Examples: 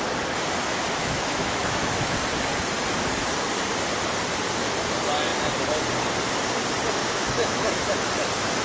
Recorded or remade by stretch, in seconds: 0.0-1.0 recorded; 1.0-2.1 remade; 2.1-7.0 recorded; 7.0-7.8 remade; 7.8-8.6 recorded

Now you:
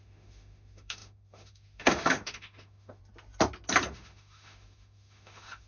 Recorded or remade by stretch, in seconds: 0.0-3.0 remade; 3.0-3.9 recorded; 3.9-5.7 remade

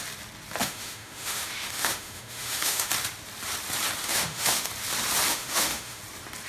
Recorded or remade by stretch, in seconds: 0.0-0.6 recorded; 0.6-2.9 remade; 2.9-4.0 recorded; 4.0-4.7 remade; 4.7-5.3 recorded; 5.3-6.0 remade; 6.0-6.5 recorded